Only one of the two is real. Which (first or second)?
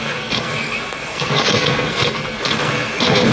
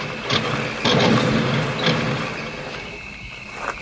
second